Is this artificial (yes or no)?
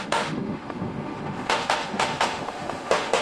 yes